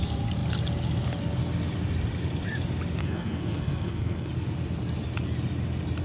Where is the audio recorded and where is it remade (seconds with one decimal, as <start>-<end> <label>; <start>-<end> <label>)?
0.0-3.0 recorded; 3.0-4.3 remade; 4.3-6.0 recorded